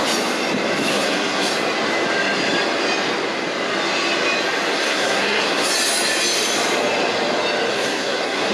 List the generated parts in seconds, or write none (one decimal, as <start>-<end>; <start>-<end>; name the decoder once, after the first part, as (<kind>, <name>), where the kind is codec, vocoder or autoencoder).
0.9-1.5 (codec, SNAC); 4.7-5.7; 7.7-8.5